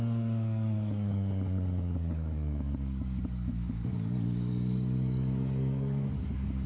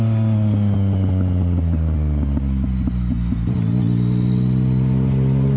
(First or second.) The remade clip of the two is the first